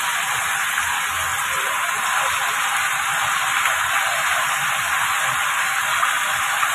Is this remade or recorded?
recorded